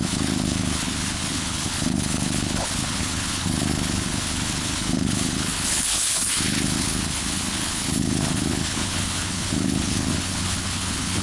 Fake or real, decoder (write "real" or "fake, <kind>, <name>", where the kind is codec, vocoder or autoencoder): fake, codec, HILCodec